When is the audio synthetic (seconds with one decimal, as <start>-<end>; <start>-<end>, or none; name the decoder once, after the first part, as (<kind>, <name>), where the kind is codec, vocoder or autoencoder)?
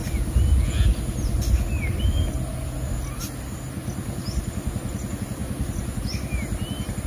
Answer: none